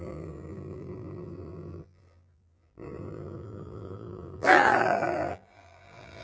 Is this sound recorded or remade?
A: remade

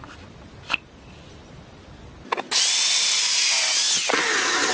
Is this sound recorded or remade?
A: recorded